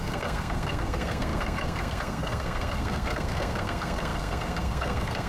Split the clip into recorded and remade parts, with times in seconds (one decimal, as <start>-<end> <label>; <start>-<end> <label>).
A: 0.0-5.3 remade